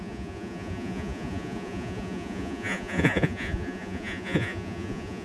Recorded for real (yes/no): no